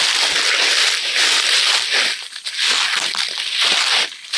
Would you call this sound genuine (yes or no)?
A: yes